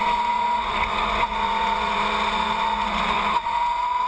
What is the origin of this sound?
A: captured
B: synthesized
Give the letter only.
B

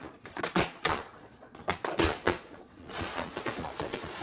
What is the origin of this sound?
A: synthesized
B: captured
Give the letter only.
A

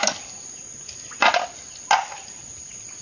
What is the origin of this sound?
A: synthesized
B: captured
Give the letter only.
B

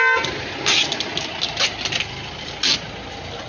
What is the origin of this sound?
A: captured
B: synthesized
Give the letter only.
A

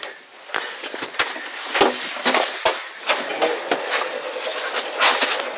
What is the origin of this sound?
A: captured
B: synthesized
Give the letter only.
A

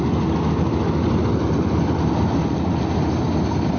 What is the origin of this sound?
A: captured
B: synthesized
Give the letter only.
A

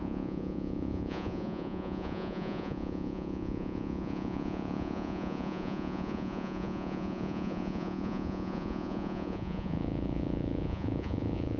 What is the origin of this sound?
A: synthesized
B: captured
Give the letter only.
A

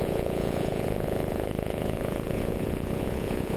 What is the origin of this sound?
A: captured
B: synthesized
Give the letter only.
B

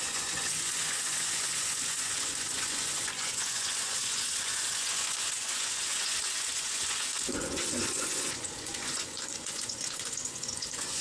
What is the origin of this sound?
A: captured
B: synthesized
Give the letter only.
B